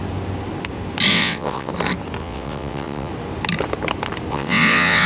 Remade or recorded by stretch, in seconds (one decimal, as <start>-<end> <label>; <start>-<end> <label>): 0.0-1.1 recorded; 1.1-1.7 remade; 1.7-2.2 recorded; 2.2-3.1 remade; 3.1-4.3 recorded; 4.3-5.1 remade